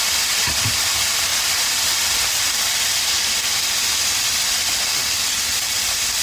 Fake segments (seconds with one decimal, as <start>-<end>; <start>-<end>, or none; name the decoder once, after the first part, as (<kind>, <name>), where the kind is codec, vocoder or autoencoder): none

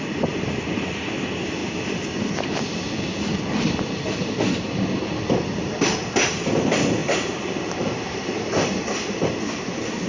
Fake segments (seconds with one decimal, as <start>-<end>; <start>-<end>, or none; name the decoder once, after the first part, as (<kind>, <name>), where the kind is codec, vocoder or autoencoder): none